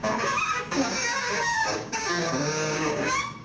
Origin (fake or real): fake